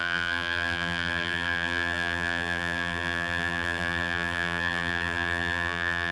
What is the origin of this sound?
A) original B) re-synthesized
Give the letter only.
B